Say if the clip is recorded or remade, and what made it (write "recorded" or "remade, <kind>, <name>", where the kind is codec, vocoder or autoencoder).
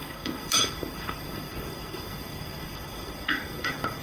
remade, codec, SNAC